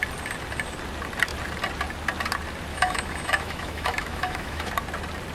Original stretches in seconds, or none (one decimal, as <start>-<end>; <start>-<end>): 0.0-2.7; 4.7-5.3